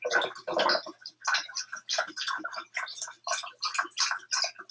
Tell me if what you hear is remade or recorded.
recorded